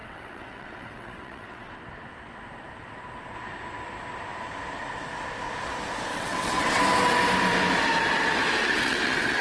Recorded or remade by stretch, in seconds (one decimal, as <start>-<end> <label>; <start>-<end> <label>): 0.0-1.7 remade; 1.7-6.1 recorded; 6.1-6.8 remade; 6.8-8.6 recorded; 8.6-9.4 remade